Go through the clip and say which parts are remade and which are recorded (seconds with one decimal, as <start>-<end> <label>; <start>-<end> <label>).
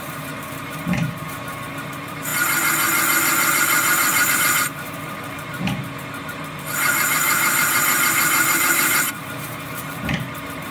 0.0-2.3 remade; 2.3-4.3 recorded; 4.3-10.7 remade